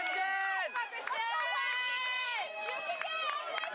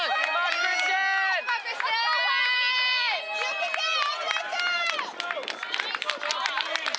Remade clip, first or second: first